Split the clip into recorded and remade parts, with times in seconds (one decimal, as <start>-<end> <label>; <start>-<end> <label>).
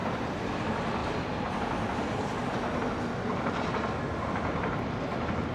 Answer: 0.0-5.5 recorded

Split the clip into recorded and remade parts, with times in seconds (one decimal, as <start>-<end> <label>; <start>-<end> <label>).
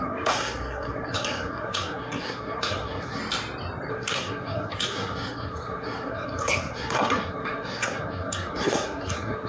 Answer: 0.0-3.2 remade; 3.2-3.9 recorded; 3.9-9.5 remade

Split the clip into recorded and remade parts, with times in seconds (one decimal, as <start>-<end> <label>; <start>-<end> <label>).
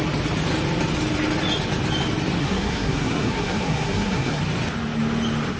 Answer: 0.0-2.4 recorded; 2.4-4.4 remade; 4.4-5.6 recorded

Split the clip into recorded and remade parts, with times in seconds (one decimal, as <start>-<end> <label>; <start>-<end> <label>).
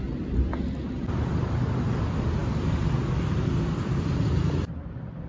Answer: 0.0-5.3 recorded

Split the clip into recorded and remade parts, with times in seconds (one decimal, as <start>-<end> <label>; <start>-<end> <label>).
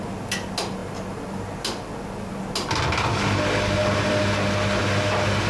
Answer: 0.0-5.5 recorded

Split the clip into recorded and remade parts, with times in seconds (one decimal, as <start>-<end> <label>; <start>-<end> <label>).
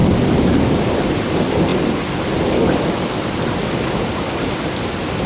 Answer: 0.0-5.3 recorded